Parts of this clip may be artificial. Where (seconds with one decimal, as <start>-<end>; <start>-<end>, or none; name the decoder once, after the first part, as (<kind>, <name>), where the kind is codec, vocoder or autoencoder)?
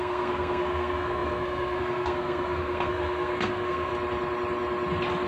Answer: 0.0-3.9 (codec, SNAC)